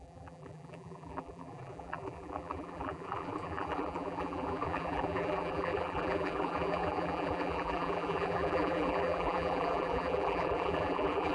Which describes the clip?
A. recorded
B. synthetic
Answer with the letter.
B